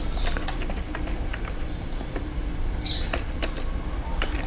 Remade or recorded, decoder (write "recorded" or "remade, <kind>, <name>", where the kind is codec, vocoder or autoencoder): remade, vocoder, BigVGAN v2